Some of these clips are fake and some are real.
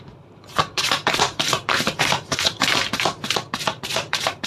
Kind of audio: fake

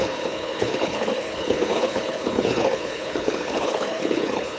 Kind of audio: fake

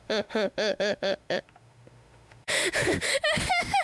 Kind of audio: fake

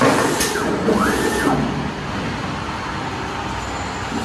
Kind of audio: real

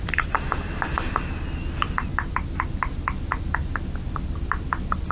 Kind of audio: real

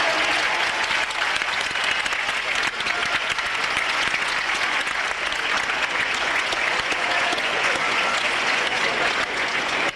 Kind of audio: fake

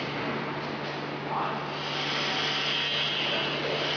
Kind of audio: real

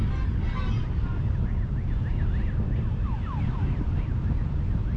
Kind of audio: real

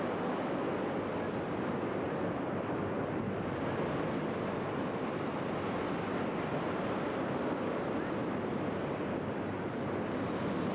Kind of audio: real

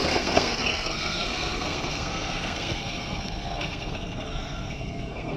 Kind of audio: fake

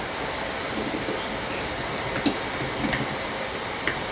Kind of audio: real